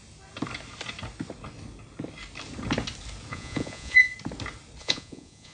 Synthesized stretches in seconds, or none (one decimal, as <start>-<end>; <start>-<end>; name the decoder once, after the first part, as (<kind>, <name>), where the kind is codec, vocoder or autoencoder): 3.3-4.1 (vocoder, Vocos); 4.8-5.5